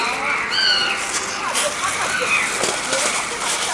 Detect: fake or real real